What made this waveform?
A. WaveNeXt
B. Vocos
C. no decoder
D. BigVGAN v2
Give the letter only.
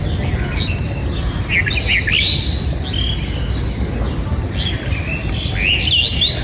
C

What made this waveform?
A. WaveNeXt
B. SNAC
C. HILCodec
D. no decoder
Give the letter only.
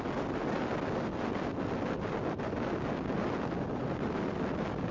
D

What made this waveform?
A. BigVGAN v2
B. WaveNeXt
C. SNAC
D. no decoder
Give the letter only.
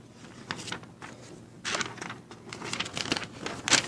D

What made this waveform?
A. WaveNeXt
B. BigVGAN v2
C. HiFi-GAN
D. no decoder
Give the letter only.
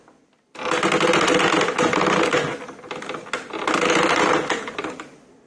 D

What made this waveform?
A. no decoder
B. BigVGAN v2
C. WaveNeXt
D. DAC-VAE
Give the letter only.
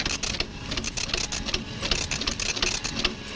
A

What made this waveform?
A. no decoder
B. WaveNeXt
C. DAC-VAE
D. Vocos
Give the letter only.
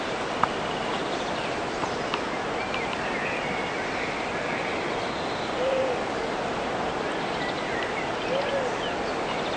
A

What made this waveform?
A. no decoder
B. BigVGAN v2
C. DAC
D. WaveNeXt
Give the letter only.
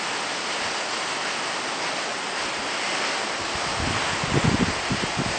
A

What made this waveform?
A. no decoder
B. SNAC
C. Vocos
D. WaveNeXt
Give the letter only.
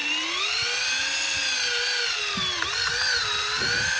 A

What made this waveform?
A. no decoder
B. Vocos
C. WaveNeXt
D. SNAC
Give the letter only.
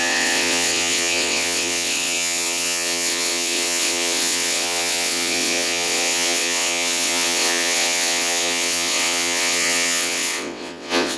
C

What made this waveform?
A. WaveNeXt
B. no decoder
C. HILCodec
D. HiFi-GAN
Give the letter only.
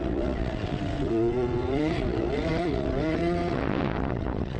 A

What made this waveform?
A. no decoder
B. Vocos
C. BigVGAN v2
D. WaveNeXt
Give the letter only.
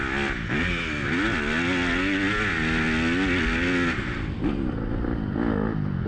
A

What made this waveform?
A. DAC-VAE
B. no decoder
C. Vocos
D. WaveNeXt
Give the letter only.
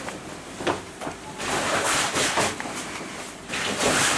B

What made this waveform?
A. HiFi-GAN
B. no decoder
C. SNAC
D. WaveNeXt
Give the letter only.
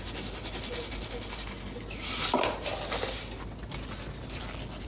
B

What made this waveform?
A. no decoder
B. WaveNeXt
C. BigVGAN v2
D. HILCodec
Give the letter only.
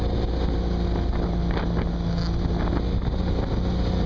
A